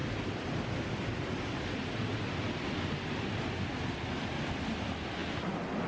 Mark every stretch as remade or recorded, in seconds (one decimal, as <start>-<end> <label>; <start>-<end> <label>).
0.0-5.9 recorded